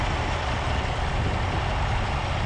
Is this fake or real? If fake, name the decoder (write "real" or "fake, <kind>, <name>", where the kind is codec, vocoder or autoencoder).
real